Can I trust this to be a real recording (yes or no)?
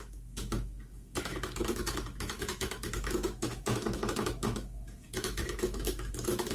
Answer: no